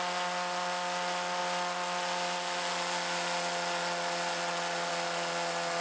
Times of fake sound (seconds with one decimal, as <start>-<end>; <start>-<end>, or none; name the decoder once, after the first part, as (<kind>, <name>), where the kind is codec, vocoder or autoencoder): none